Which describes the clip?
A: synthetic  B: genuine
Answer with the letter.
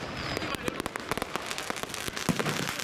B